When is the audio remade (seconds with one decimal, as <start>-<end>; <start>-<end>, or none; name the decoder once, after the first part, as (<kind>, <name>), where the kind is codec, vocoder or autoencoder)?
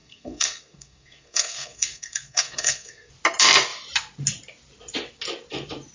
0.0-3.1 (codec, SNAC)